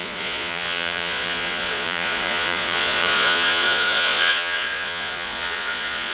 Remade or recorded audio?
remade